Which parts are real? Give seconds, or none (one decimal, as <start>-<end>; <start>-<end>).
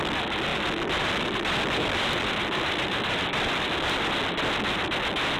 0.0-0.5; 3.7-5.4